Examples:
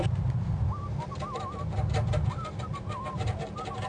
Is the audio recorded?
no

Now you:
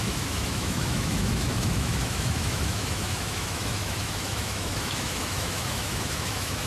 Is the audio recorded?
no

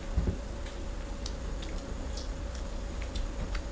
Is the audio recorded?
yes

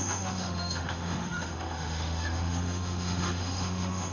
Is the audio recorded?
no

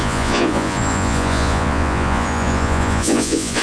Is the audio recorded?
no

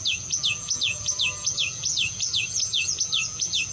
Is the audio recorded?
no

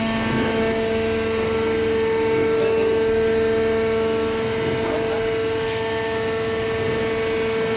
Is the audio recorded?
yes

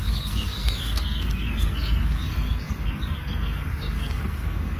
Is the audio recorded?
no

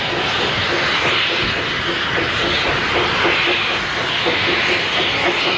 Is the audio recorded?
yes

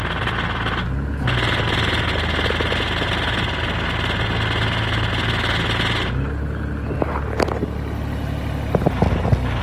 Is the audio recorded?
yes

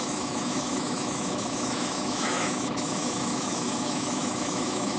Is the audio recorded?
no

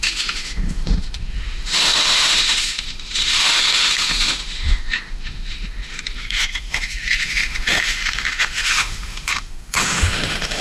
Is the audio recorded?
no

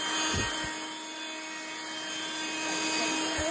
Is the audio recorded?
yes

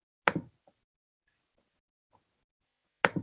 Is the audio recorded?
yes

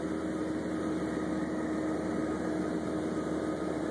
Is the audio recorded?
yes